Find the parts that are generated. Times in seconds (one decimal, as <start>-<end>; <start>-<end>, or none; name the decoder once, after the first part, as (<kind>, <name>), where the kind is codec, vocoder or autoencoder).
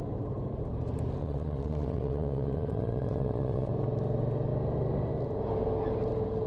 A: 1.2-3.7 (vocoder, WaveNeXt)